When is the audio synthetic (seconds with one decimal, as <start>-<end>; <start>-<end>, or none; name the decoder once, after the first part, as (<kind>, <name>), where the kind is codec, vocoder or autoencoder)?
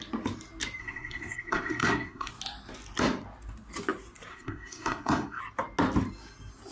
0.8-2.3 (codec, SNAC); 4.3-5.4